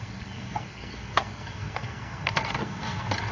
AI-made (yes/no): yes